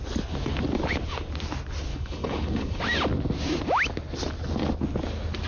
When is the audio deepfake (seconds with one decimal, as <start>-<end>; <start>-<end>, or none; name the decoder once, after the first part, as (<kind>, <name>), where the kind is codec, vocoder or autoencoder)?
1.9-2.8 (codec, HILCodec)